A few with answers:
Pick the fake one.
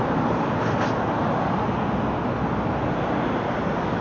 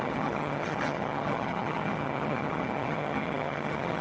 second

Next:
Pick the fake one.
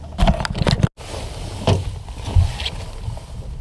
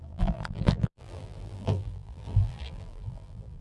second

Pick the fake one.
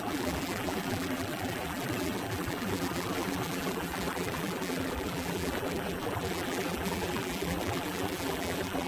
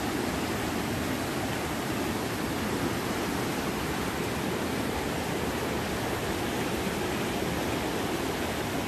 first